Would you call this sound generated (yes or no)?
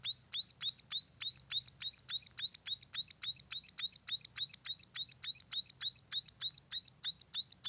no